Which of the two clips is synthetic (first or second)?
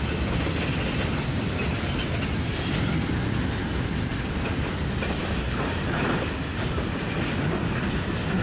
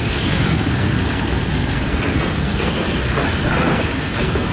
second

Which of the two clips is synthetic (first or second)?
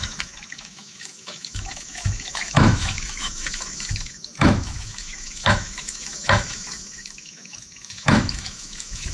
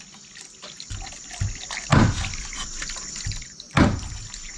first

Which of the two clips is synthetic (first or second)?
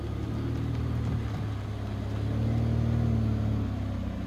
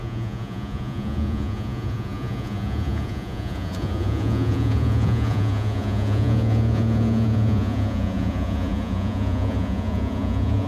second